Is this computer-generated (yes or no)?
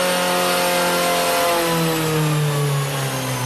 no